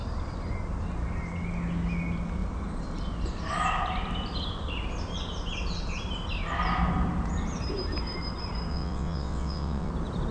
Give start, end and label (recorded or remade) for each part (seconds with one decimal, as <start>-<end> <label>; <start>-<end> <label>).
0.0-8.7 recorded; 8.7-9.9 remade; 9.9-10.3 recorded